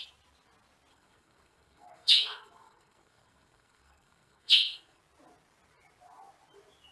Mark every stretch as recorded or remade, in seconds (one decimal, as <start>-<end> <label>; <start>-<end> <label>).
0.0-0.9 recorded; 0.9-5.0 remade; 5.0-6.9 recorded